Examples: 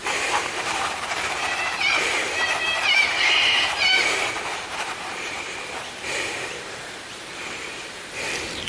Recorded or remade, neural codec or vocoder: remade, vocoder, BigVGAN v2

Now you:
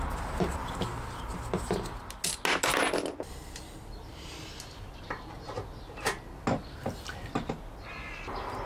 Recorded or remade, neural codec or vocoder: recorded